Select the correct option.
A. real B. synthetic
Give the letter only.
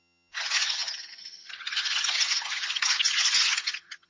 B